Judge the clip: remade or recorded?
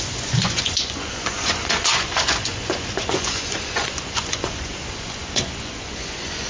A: remade